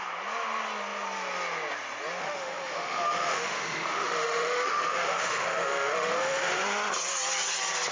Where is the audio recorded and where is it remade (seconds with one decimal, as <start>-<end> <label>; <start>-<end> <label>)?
0.0-2.2 recorded; 2.2-6.6 remade; 6.6-7.9 recorded